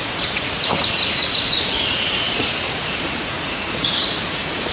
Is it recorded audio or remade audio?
remade